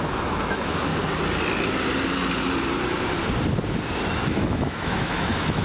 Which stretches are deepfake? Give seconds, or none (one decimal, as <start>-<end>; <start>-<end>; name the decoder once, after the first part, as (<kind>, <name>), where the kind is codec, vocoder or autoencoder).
0.0-0.9 (autoencoder, DAC-VAE); 4.1-5.6